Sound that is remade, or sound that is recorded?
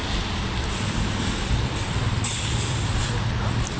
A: remade